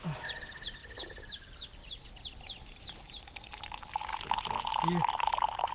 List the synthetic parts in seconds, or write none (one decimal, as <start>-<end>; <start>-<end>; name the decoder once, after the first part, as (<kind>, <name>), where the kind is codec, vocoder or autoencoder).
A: none